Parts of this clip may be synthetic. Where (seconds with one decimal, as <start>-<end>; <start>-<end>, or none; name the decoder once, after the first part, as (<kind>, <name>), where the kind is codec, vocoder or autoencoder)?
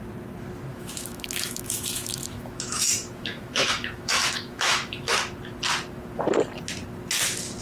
0.7-5.2 (autoencoder, DAC-VAE)